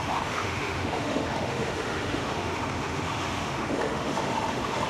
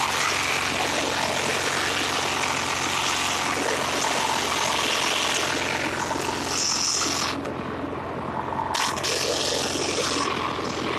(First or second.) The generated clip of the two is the first